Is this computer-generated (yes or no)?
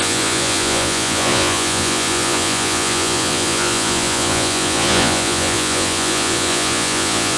yes